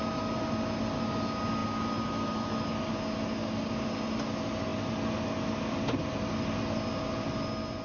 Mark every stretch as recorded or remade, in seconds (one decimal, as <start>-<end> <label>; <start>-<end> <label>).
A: 0.0-7.8 recorded